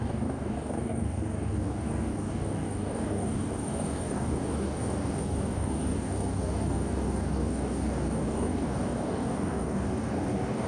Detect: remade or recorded remade